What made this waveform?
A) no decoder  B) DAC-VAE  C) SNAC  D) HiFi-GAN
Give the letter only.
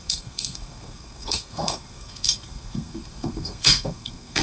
C